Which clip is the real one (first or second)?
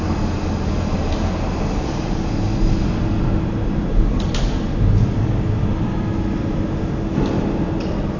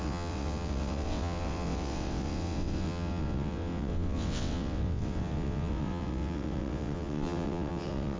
first